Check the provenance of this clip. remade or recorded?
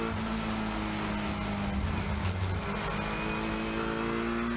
recorded